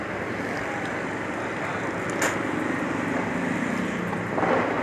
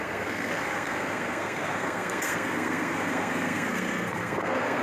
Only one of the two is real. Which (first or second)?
first